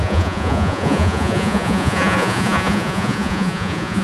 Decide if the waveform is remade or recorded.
remade